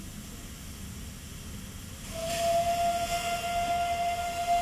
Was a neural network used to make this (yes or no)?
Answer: no